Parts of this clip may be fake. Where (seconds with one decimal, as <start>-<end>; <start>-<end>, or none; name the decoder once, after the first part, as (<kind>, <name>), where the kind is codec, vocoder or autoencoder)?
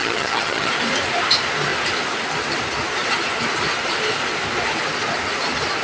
0.0-0.7 (vocoder, HiFi-GAN)